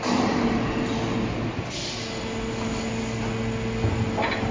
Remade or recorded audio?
recorded